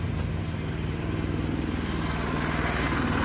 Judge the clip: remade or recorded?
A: recorded